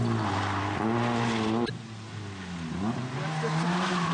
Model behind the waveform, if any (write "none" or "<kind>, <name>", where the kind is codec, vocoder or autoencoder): none